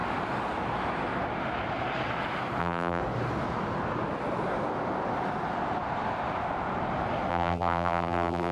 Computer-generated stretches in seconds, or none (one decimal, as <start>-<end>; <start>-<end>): 2.6-3.0; 7.3-8.5